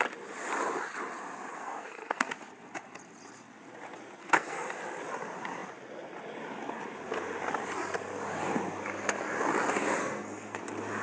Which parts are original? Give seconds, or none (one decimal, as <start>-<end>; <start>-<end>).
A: 0.0-1.5; 2.3-4.2; 4.8-10.0; 10.6-11.0